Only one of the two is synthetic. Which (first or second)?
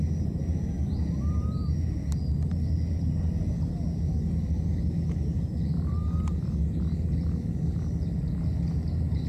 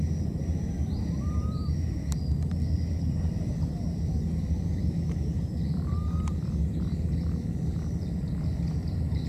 second